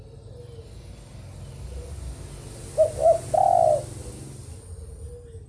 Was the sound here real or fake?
real